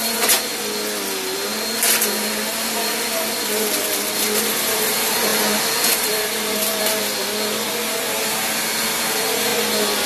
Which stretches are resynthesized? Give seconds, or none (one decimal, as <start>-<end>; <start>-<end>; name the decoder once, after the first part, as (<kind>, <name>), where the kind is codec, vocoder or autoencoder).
0.0-0.5 (vocoder, BigVGAN v2); 3.0-9.5